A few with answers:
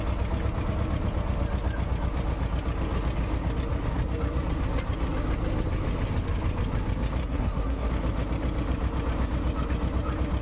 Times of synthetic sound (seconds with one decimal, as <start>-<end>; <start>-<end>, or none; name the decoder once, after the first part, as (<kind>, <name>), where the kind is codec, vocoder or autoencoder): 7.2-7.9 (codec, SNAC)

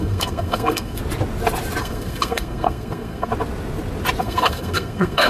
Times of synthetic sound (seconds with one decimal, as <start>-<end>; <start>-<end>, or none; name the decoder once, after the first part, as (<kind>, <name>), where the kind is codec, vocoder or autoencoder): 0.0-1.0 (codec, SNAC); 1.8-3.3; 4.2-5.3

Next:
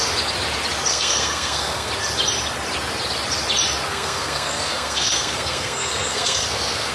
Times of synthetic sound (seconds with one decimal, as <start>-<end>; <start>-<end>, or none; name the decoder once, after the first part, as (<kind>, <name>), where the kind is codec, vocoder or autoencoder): 0.9-1.9 (codec, SNAC); 3.9-6.9

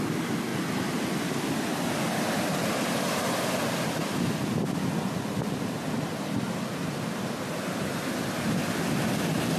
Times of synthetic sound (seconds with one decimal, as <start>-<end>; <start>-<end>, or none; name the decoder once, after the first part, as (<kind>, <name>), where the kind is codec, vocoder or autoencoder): none

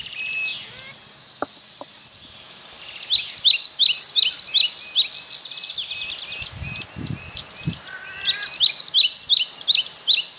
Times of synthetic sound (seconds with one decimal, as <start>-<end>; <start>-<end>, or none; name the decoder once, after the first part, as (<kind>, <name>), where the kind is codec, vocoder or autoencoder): none

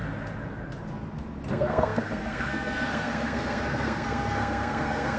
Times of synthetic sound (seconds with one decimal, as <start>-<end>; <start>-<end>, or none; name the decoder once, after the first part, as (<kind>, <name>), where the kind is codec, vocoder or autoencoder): 1.5-5.2 (codec, SNAC)

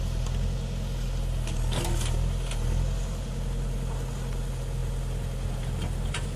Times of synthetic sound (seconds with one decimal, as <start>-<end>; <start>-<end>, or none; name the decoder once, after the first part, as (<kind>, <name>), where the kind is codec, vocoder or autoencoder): none

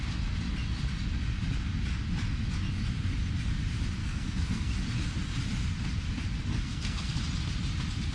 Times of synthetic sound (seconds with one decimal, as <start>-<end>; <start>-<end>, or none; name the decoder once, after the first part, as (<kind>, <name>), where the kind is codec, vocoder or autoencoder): 4.0-4.7 (codec, SNAC); 6.5-7.2